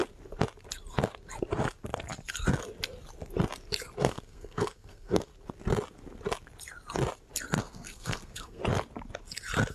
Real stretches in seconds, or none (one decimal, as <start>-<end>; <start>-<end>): 0.0-4.0; 5.3-7.6; 8.6-9.7